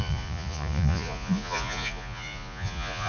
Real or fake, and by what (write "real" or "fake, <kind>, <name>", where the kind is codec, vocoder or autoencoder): fake, vocoder, Vocos